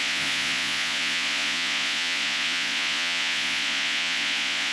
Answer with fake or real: fake